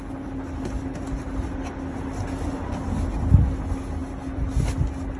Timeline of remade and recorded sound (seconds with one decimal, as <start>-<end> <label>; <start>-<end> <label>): 0.0-5.2 recorded